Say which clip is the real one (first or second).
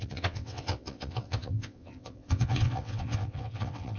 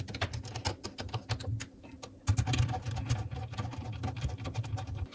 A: second